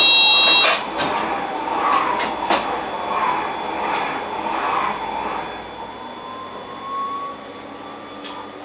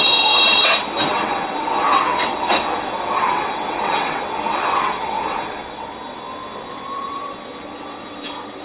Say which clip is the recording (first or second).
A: first